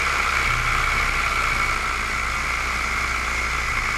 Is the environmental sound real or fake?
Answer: real